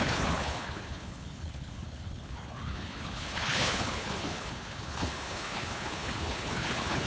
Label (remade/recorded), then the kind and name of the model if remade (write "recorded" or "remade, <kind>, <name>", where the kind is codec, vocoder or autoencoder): remade, codec, HILCodec